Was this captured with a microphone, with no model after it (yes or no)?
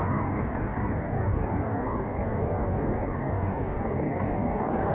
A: no